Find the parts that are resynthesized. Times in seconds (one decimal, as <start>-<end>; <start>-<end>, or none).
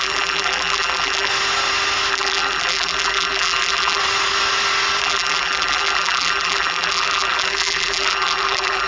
0.0-1.3; 2.1-4.0; 5.0-8.9